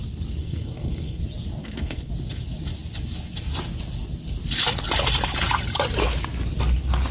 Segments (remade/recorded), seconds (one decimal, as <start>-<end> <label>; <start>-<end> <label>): 0.0-0.4 recorded; 0.4-1.2 remade; 1.2-1.6 recorded; 1.6-2.1 remade; 2.1-7.1 recorded